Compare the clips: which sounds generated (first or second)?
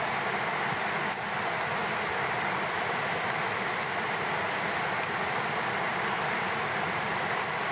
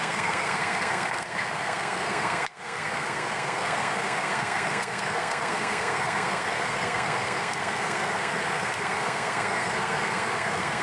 second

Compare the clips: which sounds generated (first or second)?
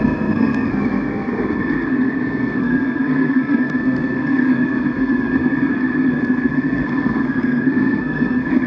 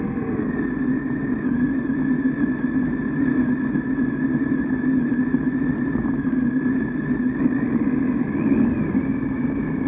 first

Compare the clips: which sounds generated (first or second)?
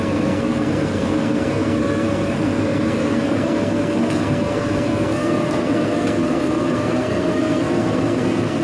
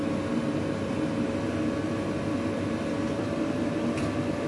first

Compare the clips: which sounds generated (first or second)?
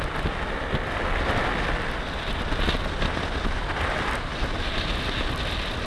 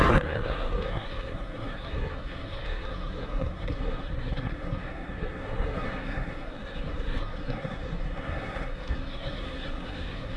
second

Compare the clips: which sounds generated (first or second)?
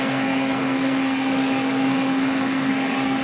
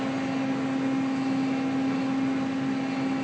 first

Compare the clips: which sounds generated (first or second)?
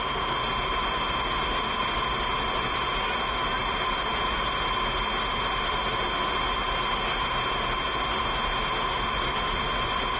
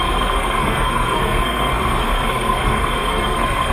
second